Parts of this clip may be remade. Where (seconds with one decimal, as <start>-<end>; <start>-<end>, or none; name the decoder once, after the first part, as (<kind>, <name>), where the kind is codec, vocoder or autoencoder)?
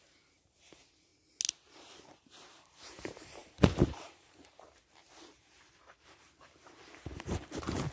0.0-1.1 (vocoder, BigVGAN v2); 1.9-7.9